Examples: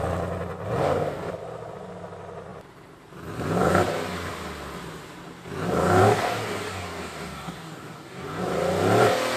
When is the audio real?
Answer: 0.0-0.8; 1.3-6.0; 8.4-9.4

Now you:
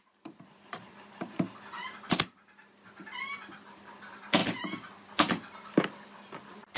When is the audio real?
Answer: 0.0-6.8

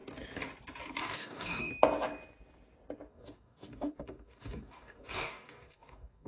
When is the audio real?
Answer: 0.0-1.0; 1.7-3.1

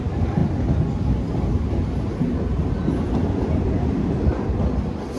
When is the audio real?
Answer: 0.0-5.2